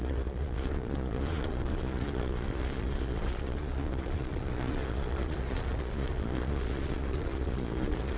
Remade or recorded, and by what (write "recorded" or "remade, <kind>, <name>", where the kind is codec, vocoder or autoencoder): remade, vocoder, Vocos